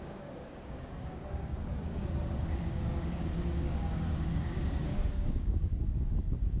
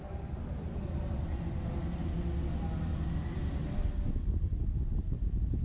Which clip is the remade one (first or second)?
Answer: first